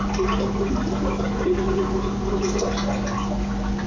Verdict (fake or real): real